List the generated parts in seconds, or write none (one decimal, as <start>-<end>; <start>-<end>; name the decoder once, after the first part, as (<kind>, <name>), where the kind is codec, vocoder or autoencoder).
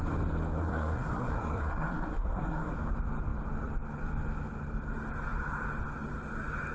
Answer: 0.6-2.7 (codec, SNAC)